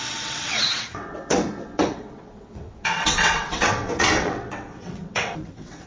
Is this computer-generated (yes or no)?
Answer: yes